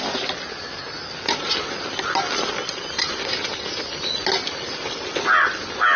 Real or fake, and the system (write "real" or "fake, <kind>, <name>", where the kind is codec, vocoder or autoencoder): real